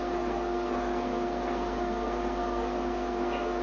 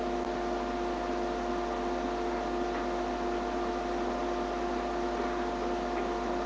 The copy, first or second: first